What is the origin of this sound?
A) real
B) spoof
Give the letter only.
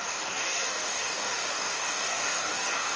B